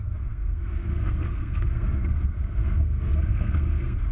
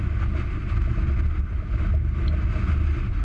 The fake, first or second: first